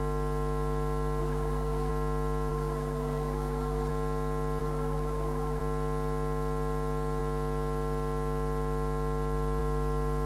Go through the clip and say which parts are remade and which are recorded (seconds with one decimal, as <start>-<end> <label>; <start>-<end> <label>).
0.0-1.2 recorded; 1.2-1.9 remade; 1.9-2.5 recorded; 2.5-3.9 remade; 3.9-4.6 recorded; 4.6-5.6 remade; 5.6-10.3 recorded